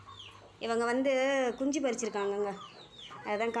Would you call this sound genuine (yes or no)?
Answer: yes